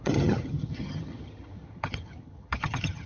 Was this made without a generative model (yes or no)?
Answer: no